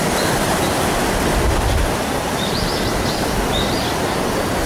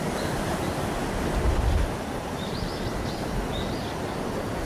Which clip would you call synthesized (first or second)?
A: first